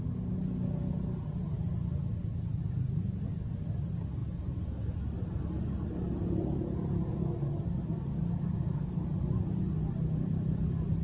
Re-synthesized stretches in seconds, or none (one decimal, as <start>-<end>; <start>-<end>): none

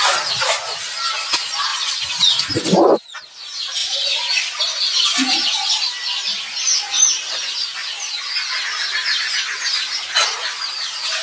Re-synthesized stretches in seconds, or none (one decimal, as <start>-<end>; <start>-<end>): 1.7-2.4; 3.8-4.6

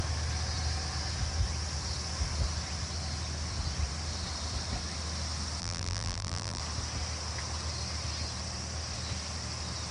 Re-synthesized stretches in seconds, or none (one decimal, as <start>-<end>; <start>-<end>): 5.6-6.6